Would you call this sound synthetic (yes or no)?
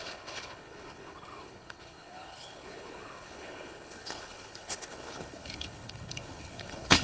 yes